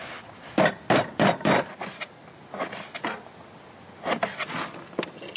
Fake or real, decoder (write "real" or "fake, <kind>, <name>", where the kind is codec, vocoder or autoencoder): real